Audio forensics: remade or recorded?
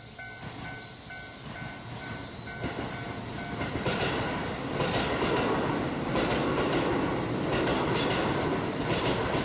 recorded